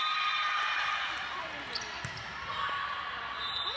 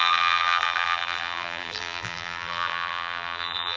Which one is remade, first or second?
second